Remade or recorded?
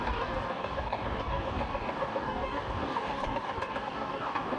remade